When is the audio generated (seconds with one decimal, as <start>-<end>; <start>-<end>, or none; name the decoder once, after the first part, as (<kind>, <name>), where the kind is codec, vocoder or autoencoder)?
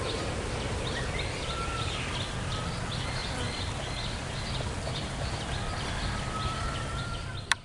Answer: 3.2-7.0 (vocoder, BigVGAN v2)